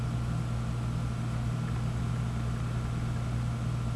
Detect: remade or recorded recorded